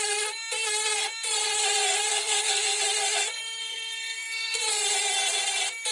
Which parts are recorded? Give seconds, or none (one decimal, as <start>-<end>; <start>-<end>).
0.0-2.1; 2.8-3.6; 4.6-5.9